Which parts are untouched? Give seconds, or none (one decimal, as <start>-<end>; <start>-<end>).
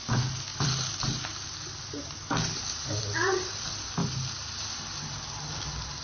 0.0-0.5; 1.3-4.0; 4.7-6.0